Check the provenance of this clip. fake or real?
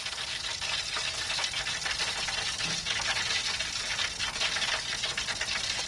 real